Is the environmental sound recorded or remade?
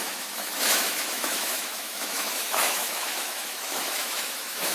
remade